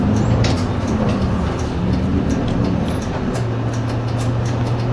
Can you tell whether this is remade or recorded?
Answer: recorded